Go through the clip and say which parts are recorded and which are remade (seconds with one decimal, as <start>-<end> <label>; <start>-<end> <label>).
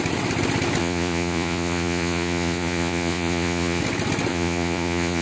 0.0-0.8 recorded; 0.8-3.8 remade; 3.8-4.3 recorded; 4.3-5.2 remade